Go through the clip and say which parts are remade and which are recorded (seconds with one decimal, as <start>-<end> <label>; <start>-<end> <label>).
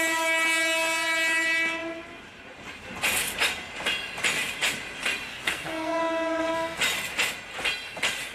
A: 0.0-5.3 recorded; 5.3-6.8 remade; 6.8-8.3 recorded